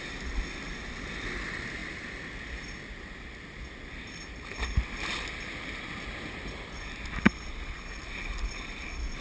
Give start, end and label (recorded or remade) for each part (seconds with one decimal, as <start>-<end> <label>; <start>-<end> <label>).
0.0-9.2 recorded

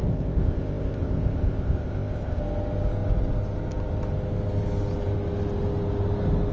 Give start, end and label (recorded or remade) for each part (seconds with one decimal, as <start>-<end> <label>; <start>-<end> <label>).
0.0-2.4 remade; 2.4-6.5 recorded